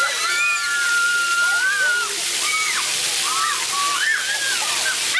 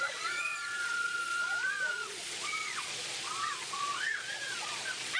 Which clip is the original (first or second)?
first